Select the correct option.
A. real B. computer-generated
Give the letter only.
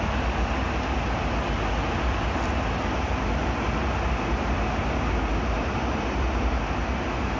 A